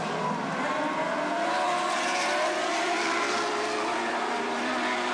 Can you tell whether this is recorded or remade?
remade